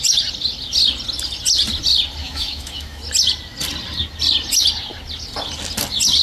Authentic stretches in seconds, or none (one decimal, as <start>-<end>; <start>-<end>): 0.0-2.2; 3.0-6.2